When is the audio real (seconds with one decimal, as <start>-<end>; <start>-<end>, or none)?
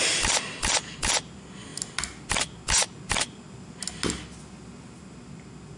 0.0-5.8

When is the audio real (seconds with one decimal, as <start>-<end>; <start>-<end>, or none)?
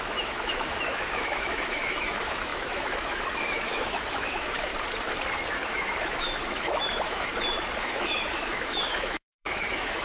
4.7-5.5; 7.3-7.8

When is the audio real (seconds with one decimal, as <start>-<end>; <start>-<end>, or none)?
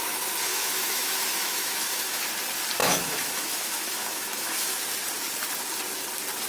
0.0-0.5; 2.2-2.8; 4.8-6.5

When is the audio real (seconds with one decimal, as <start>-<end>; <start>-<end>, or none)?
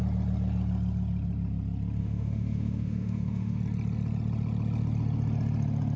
0.0-2.0; 3.6-6.0